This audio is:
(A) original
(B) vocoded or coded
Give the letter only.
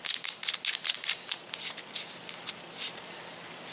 A